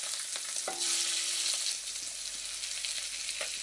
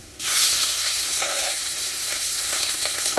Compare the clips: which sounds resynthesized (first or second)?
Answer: second